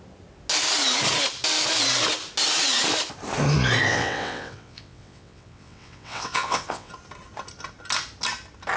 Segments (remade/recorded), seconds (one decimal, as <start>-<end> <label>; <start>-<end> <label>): 0.0-3.9 recorded; 3.9-6.9 remade; 6.9-8.8 recorded